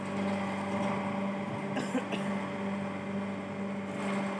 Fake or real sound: real